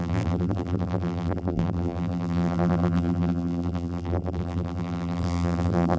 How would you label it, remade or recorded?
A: remade